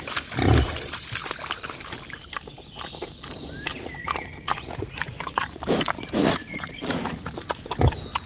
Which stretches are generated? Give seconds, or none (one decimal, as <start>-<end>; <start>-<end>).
3.7-5.6; 6.2-7.7